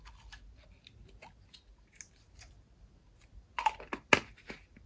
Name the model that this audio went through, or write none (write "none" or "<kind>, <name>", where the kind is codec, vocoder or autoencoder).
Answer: none